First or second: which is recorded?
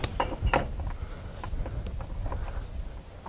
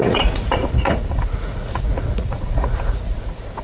first